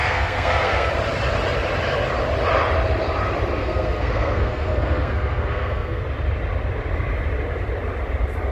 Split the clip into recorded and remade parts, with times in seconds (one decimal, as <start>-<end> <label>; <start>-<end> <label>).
0.0-0.9 remade; 0.9-3.6 recorded; 3.6-6.0 remade; 6.0-8.5 recorded